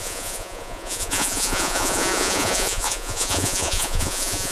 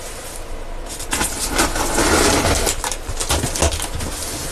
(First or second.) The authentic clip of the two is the second